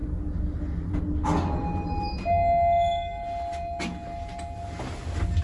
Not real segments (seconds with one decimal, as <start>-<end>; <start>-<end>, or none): none